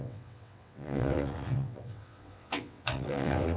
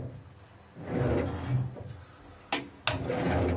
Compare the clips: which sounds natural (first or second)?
second